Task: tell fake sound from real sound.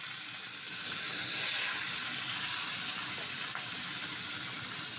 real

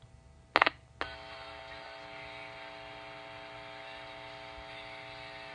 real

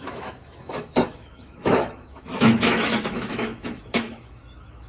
fake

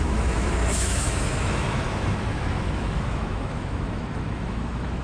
fake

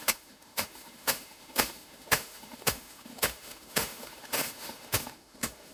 fake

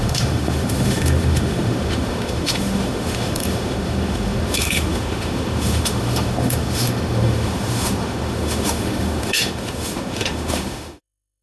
fake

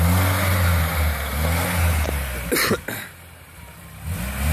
real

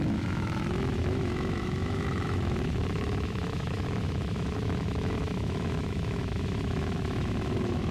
fake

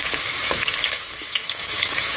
fake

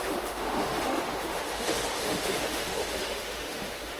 fake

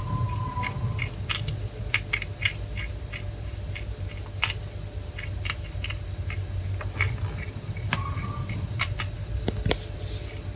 real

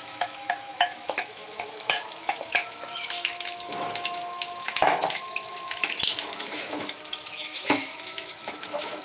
fake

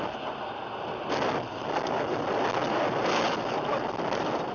real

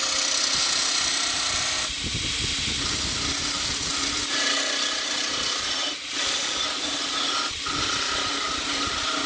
real